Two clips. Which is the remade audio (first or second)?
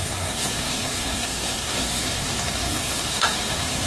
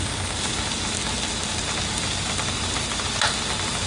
first